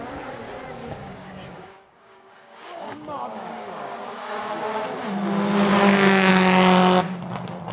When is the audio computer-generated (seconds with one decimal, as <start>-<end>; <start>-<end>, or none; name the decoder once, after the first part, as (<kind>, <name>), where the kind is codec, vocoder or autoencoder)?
0.8-4.4 (codec, DAC); 5.7-6.3